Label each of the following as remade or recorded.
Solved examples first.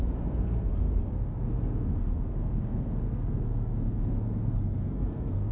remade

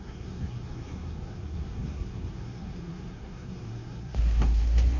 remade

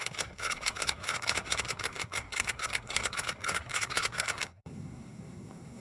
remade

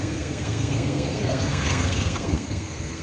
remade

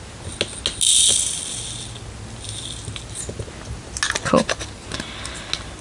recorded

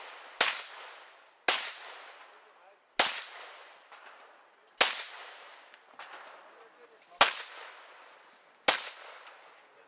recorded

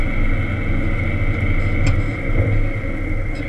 recorded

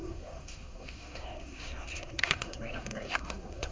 remade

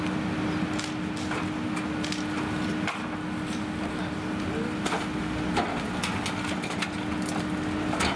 recorded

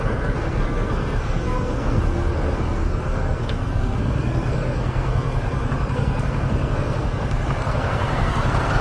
remade